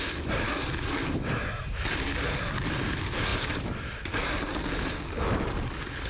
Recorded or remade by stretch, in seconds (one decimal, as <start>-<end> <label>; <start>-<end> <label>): 0.0-6.1 recorded